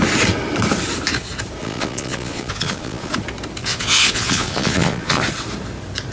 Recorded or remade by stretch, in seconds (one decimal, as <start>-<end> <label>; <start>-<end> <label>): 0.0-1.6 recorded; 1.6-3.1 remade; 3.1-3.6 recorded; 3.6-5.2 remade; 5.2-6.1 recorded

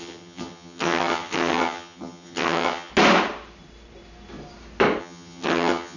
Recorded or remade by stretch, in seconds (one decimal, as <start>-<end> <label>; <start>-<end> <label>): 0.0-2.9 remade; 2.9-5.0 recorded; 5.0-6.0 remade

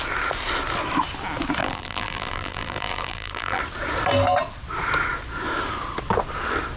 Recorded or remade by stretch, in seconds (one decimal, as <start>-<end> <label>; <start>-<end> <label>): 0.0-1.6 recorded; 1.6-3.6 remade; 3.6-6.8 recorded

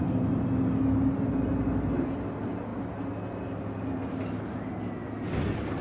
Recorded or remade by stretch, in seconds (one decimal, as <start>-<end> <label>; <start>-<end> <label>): 0.0-5.8 recorded

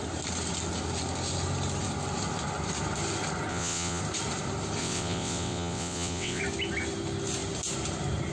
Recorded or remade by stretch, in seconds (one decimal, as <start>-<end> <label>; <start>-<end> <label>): 0.0-3.5 recorded; 3.5-4.0 remade; 4.0-4.8 recorded; 4.8-6.4 remade; 6.4-8.3 recorded